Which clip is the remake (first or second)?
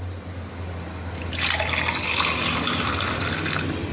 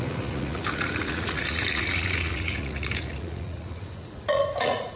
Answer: second